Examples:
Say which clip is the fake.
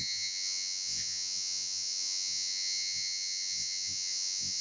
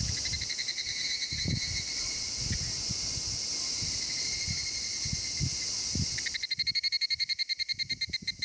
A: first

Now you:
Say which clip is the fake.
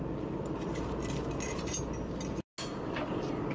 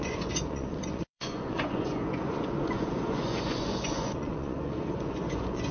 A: second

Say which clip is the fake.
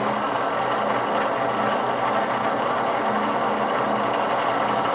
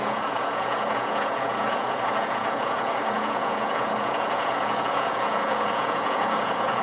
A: second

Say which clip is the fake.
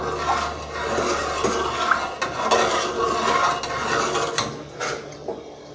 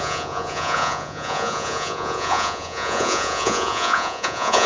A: second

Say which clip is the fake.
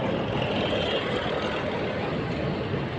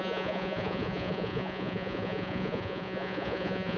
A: second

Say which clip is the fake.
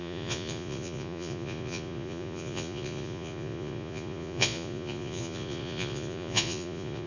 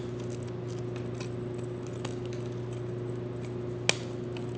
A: first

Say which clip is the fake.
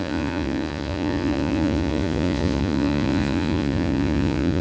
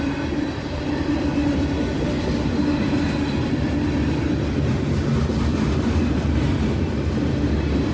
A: first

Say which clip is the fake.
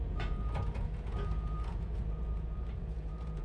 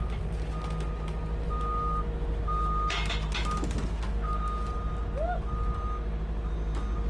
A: first